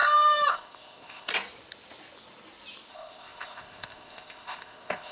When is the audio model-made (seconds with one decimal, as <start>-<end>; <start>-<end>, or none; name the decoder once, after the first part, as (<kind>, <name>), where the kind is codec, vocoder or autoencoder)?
0.5-1.3 (codec, ZipCodec); 2.9-5.1